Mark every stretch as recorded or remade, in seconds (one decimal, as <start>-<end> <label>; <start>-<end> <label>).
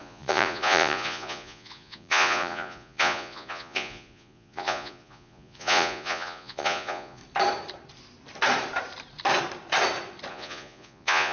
0.0-7.2 remade; 7.2-10.3 recorded; 10.3-11.3 remade